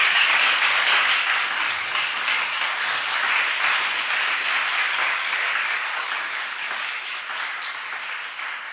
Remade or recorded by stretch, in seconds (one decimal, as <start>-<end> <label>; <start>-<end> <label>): 0.0-3.3 remade; 3.3-4.8 recorded; 4.8-7.2 remade; 7.2-8.7 recorded